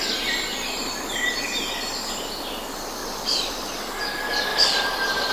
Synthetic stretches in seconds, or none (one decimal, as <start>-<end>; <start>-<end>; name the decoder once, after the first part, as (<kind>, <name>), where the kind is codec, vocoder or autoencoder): 3.0-3.9 (vocoder, BigVGAN v2); 4.5-5.3